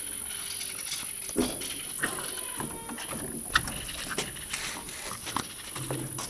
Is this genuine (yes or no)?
yes